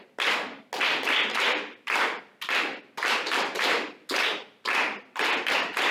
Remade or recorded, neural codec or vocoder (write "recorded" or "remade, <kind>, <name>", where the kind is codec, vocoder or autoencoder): recorded